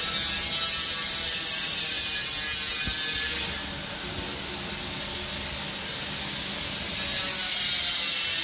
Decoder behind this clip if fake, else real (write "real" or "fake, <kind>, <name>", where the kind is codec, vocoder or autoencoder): real